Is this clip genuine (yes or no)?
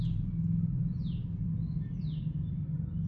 yes